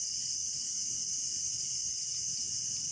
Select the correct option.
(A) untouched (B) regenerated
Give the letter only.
A